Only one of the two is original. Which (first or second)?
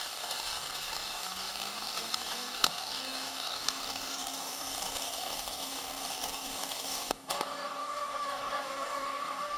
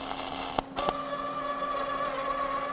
second